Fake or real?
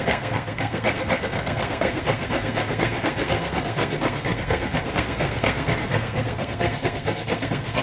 fake